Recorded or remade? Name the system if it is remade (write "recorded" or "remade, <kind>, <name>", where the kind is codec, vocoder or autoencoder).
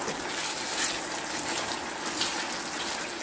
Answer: recorded